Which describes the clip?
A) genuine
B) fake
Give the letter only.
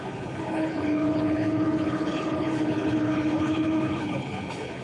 B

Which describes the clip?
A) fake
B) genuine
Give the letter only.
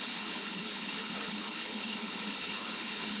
A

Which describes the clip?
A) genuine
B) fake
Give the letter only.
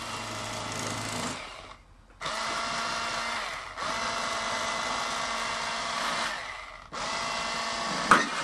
A